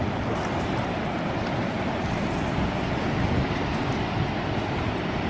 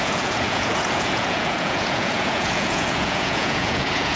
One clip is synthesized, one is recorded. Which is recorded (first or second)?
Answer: first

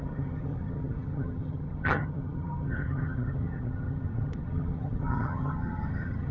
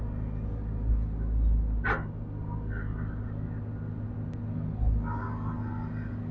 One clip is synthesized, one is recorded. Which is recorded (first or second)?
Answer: second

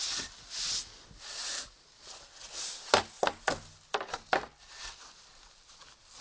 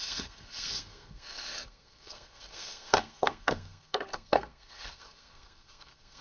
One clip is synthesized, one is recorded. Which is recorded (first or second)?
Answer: first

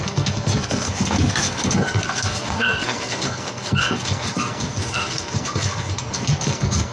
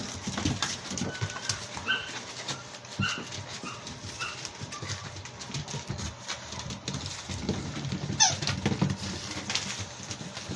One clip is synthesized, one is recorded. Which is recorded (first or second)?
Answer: second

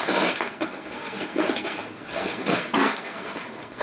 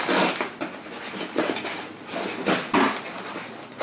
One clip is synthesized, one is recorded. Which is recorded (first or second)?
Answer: second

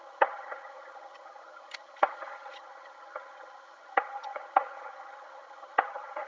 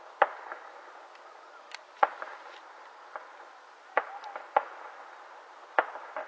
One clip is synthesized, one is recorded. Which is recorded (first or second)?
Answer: second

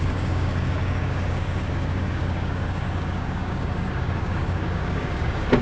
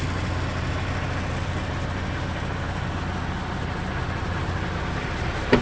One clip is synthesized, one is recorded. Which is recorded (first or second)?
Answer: second